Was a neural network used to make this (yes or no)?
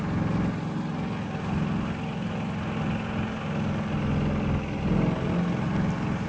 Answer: no